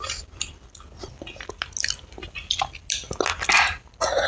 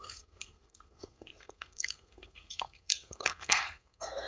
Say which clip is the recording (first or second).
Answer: first